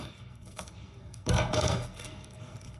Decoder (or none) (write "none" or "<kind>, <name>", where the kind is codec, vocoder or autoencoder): codec, SNAC